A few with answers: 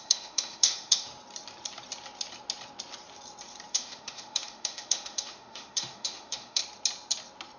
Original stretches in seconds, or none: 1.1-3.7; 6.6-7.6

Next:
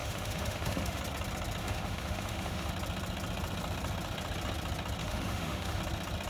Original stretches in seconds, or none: 1.0-1.6; 2.7-5.0; 5.8-6.3